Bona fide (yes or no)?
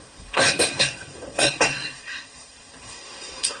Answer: no